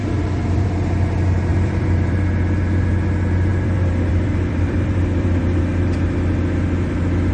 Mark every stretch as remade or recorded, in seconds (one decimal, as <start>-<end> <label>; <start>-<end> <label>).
0.0-0.7 remade; 0.7-1.5 recorded; 1.5-2.2 remade; 2.2-3.5 recorded; 3.5-5.6 remade; 5.6-7.3 recorded